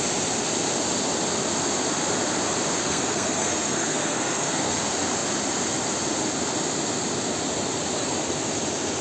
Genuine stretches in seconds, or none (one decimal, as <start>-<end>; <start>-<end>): 0.0-2.8; 4.8-9.0